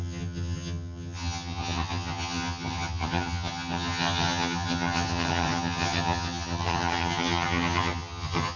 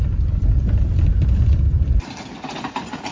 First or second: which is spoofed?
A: first